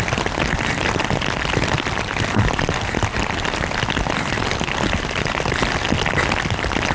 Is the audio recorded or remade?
recorded